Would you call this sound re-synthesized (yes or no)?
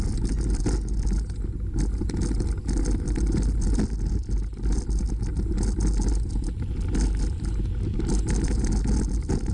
no